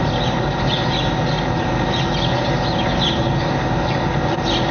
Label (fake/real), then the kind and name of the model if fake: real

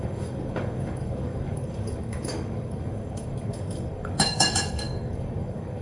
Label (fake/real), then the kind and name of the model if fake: fake, codec, DAC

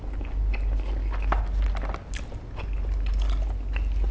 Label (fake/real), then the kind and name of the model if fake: real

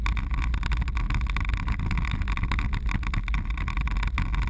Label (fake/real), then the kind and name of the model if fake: real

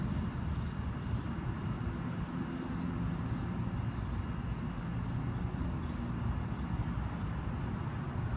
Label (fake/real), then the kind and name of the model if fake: real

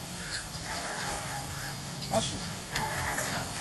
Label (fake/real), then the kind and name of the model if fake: fake, codec, DAC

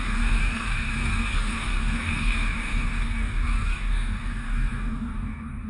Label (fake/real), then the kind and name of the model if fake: fake, codec, DAC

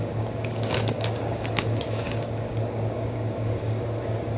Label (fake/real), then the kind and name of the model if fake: fake, codec, DAC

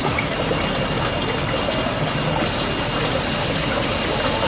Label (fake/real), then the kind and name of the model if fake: real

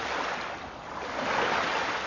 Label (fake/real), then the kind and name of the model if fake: real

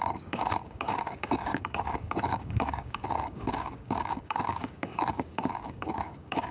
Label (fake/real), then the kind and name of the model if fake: fake, codec, DAC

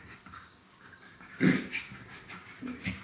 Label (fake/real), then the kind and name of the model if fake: fake, codec, DAC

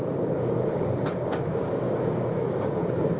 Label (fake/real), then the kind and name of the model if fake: fake, codec, DAC